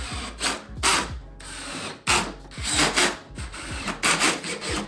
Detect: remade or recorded recorded